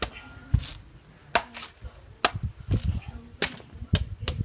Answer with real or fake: real